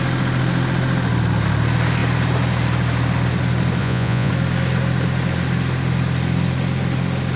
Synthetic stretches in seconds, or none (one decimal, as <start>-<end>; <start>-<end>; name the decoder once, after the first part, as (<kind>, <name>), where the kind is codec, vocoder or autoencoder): 3.8-4.3 (vocoder, Vocos)